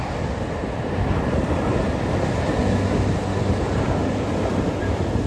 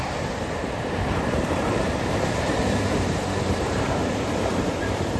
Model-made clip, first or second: second